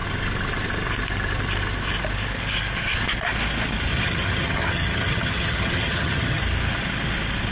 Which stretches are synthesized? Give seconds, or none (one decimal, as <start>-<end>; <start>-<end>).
3.9-6.4